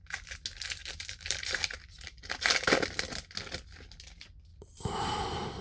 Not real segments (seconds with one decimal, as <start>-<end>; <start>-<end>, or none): 0.8-2.3; 4.5-5.6

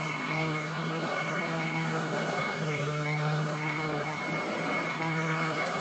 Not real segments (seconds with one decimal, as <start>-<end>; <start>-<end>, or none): 0.0-4.2; 4.9-5.8